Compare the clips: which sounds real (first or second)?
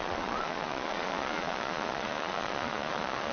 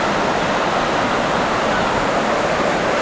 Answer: second